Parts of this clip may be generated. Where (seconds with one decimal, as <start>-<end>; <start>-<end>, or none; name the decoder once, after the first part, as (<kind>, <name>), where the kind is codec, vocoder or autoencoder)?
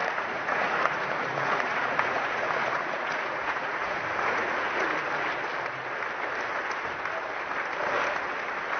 0.0-4.9 (vocoder, Vocos)